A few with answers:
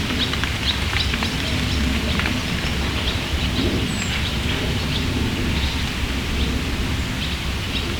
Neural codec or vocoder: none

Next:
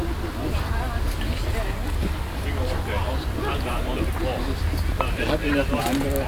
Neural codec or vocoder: none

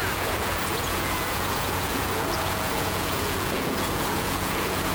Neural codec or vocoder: vocoder, Vocos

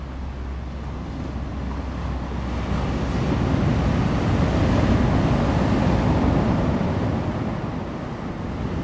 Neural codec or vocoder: none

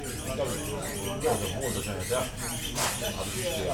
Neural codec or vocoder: none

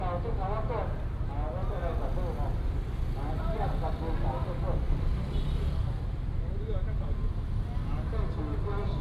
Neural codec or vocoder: none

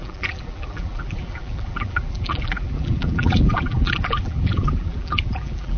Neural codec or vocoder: vocoder, BigVGAN v2